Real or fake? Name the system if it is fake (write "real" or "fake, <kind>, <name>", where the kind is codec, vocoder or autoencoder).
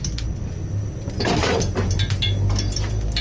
real